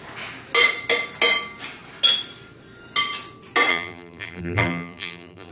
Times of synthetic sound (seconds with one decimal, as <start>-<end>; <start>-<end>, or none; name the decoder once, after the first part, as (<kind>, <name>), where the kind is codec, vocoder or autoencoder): 3.7-5.5 (vocoder, BigVGAN v2)